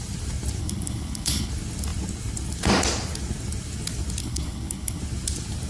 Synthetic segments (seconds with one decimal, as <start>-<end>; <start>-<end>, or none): 0.6-1.5; 4.2-5.0